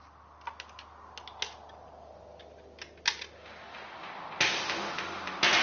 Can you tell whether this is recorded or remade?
recorded